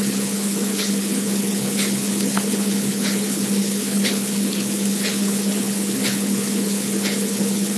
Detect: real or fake fake